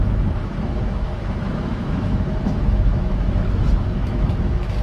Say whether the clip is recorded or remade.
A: remade